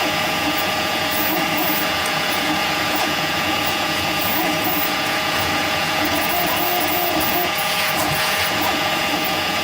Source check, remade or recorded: remade